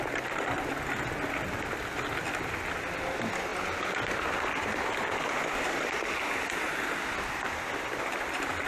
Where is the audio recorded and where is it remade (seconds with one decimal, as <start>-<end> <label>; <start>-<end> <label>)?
0.0-8.7 recorded

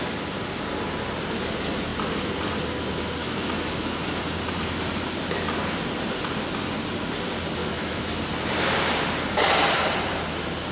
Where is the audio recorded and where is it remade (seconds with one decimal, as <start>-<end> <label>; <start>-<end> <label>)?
0.0-3.2 recorded; 3.2-4.0 remade; 4.0-7.6 recorded; 7.6-8.1 remade; 8.1-10.7 recorded

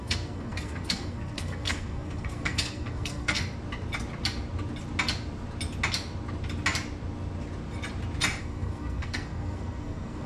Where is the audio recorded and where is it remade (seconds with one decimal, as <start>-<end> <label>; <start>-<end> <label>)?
0.0-3.4 remade; 3.4-8.4 recorded; 8.4-10.3 remade

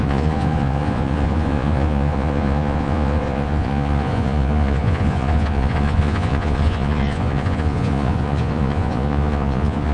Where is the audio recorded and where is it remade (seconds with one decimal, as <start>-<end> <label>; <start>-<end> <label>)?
0.0-9.9 remade

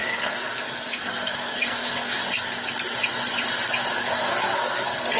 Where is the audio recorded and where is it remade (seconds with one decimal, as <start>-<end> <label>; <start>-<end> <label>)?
0.0-2.2 remade; 2.2-4.0 recorded; 4.0-5.2 remade

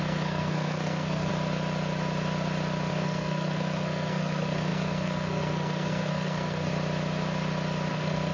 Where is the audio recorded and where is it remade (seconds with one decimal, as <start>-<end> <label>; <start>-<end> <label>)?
0.0-1.3 remade; 1.3-2.9 recorded; 2.9-6.7 remade; 6.7-7.9 recorded; 7.9-8.3 remade

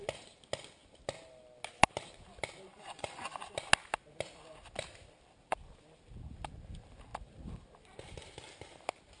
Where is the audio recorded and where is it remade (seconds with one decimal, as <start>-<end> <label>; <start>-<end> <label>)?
0.0-2.7 recorded; 2.7-3.3 remade; 3.3-9.2 recorded

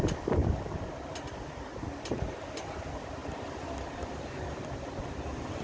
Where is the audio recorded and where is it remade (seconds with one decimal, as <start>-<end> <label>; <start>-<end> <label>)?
0.0-5.6 recorded